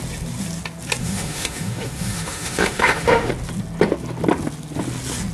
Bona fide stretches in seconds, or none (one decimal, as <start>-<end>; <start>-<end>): 0.0-1.0; 3.3-5.3